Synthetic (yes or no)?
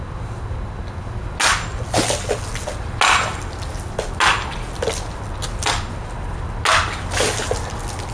no